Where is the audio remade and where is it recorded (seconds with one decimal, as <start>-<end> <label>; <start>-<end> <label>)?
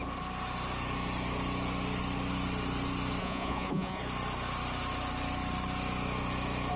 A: 0.0-3.2 recorded; 3.2-4.0 remade; 4.0-6.8 recorded